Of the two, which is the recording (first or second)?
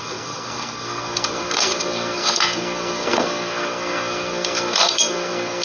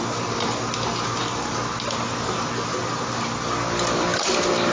second